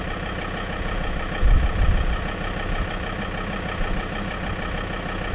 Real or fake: real